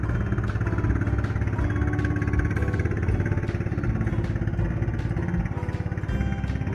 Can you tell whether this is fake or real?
real